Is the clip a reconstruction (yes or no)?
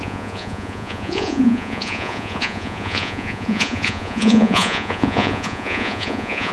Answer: yes